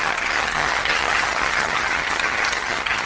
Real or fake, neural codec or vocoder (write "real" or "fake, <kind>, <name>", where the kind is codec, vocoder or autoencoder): fake, vocoder, HiFi-GAN